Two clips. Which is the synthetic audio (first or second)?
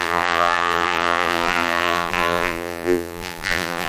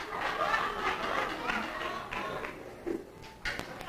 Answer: first